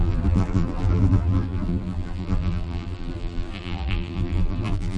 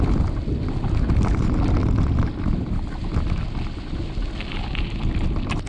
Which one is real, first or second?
second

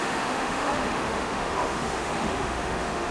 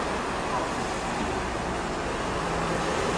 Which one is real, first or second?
second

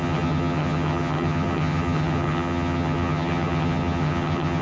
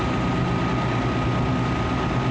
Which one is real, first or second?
second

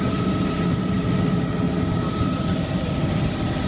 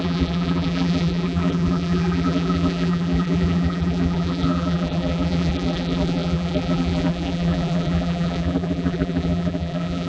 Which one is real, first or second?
first